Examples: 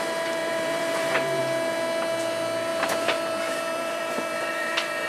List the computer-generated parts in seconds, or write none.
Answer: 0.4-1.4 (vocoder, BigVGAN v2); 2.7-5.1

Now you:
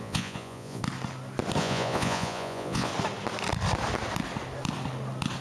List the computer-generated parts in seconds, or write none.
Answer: 0.0-0.8 (vocoder, Vocos); 1.6-2.9

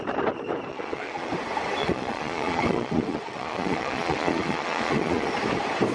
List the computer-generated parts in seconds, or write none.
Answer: 0.7-1.3 (vocoder, Vocos); 1.8-5.3